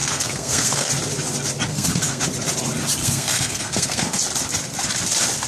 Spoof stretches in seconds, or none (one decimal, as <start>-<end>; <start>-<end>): 0.0-0.9; 1.7-2.2; 3.0-4.2